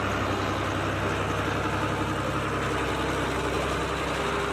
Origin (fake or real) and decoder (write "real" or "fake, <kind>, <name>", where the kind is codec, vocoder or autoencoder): real